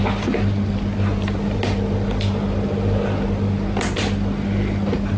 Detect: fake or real real